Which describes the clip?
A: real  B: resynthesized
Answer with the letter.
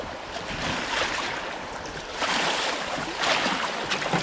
A